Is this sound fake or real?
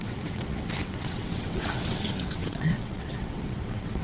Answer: fake